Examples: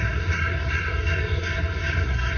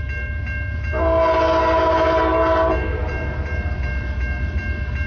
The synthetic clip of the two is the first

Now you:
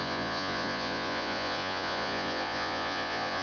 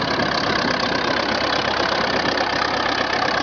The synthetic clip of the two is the first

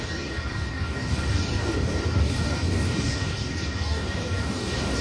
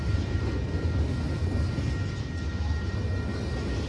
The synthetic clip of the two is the first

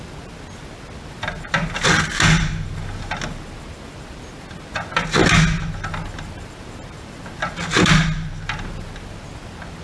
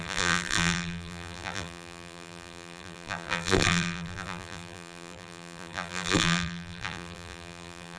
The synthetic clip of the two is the second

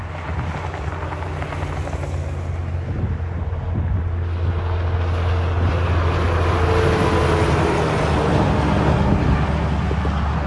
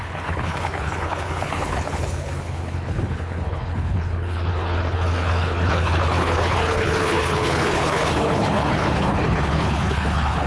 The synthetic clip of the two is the second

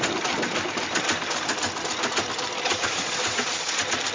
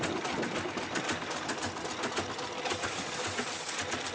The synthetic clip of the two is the first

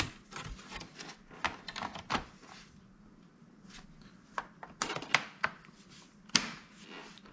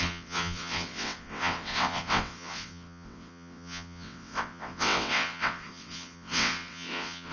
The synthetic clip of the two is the second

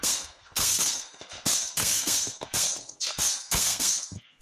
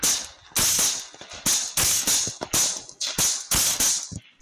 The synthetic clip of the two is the first